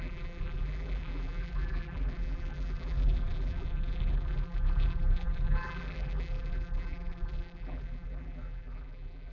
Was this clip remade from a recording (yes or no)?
yes